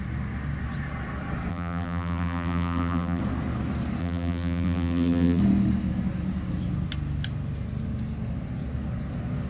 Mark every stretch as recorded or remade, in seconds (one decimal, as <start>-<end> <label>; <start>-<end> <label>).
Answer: 0.0-1.5 recorded; 1.5-3.2 remade; 3.2-4.0 recorded; 4.0-5.4 remade; 5.4-9.5 recorded